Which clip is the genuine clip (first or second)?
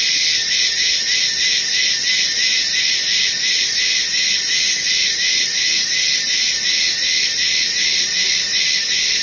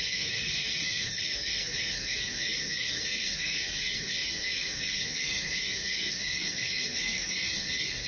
first